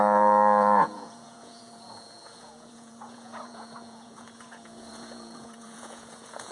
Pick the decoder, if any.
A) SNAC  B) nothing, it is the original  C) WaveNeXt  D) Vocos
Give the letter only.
D